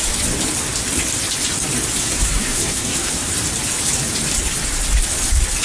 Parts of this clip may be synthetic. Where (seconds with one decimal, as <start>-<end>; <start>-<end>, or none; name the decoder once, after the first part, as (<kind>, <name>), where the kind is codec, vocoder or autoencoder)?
2.0-3.3 (codec, SNAC)